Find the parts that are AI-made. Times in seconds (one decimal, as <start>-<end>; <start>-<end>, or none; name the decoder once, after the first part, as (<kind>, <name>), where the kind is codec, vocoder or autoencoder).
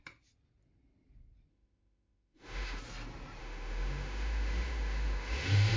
1.5-2.8 (autoencoder, DAC-VAE); 3.4-5.8